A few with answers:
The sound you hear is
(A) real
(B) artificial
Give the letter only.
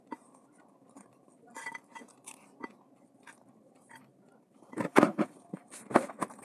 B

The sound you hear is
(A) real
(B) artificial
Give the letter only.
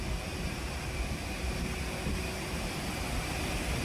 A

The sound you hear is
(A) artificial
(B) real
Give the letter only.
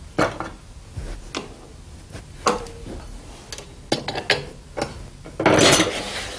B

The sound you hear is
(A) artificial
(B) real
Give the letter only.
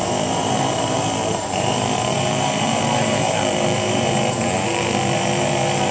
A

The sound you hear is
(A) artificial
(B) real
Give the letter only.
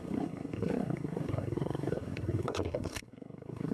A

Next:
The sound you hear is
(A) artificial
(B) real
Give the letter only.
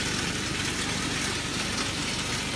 B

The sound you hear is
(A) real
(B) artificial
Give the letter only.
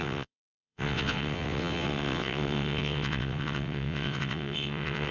B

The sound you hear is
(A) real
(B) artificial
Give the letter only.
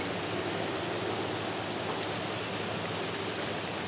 A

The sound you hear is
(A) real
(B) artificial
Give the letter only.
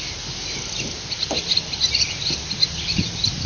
A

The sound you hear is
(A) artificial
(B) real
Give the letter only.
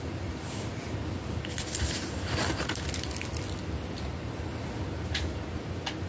B